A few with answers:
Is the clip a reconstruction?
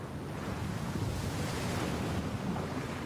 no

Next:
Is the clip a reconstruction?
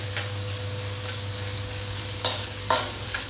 yes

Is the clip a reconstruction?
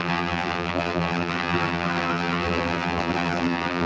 yes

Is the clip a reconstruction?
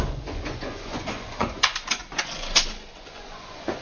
yes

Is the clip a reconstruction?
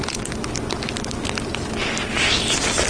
no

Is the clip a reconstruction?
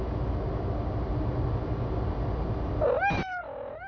no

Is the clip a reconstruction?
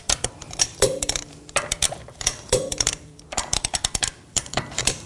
yes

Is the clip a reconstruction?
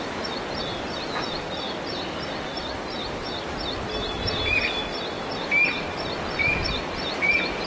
no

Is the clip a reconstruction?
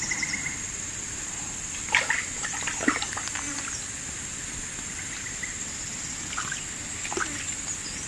no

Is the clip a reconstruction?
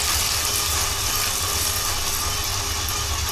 no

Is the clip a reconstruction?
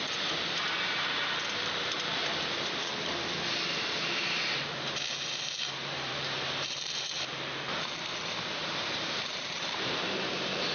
yes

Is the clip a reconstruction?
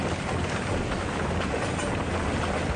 no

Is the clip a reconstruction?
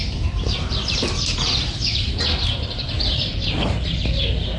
yes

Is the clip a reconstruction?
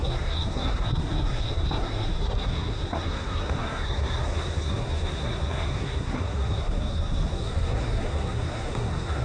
yes